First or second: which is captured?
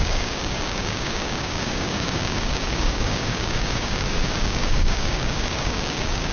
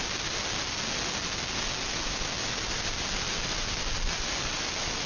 second